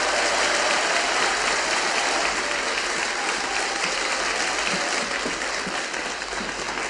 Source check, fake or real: real